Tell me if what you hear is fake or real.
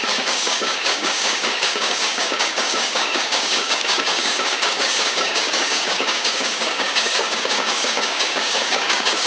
fake